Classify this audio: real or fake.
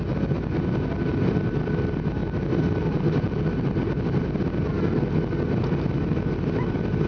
real